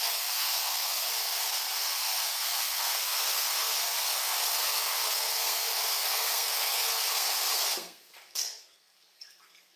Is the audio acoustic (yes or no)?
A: no